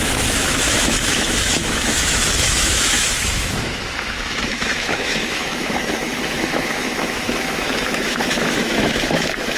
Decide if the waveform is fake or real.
fake